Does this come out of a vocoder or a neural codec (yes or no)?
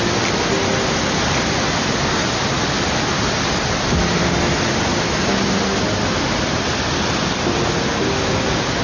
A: no